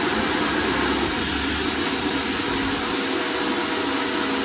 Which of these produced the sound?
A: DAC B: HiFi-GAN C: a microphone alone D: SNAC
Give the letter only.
C